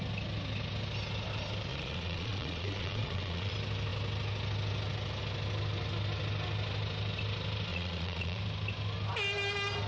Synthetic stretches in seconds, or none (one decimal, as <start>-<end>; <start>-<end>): 1.7-3.5; 7.7-8.4